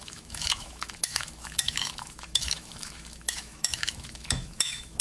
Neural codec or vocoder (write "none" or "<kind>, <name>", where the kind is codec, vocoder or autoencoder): autoencoder, DAC-VAE